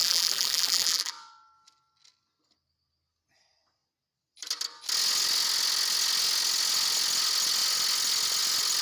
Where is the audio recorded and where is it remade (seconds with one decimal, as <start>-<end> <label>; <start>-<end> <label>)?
0.0-1.1 remade; 1.1-8.8 recorded